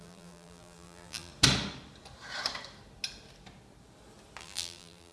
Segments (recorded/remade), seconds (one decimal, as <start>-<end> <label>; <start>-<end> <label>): 0.0-1.3 remade; 1.3-4.4 recorded; 4.4-5.1 remade